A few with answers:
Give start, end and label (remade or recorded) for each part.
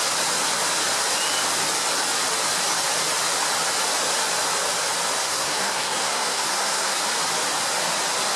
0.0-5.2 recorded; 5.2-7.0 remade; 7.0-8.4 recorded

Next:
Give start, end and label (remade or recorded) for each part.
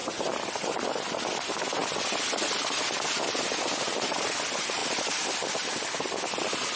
0.0-6.8 recorded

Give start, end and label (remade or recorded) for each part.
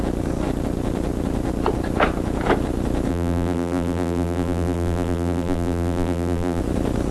0.0-3.1 recorded; 3.1-6.6 remade; 6.6-7.1 recorded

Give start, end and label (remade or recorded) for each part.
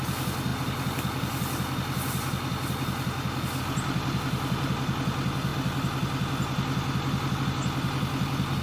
0.0-8.6 recorded